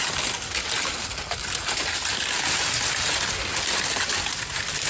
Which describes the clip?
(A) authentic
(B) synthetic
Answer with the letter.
A